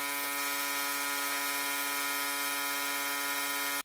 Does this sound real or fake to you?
real